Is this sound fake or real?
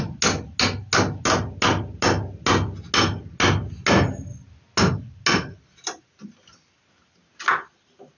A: real